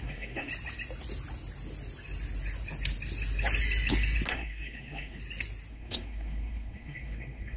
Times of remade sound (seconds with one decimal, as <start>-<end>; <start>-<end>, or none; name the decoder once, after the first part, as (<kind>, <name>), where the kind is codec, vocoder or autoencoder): 0.0-0.5 (codec, SNAC); 4.3-5.2; 5.7-7.6